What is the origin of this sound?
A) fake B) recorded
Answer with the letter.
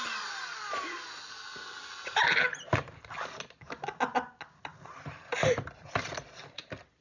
B